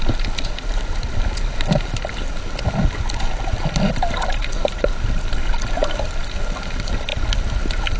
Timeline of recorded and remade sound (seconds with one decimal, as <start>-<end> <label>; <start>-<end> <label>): 0.0-8.0 recorded